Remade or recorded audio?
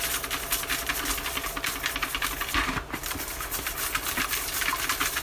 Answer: recorded